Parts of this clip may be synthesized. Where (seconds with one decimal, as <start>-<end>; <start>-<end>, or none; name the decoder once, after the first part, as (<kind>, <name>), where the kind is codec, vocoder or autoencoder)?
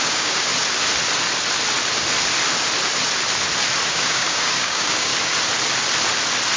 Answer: 0.0-0.5 (codec, DAC); 3.9-5.1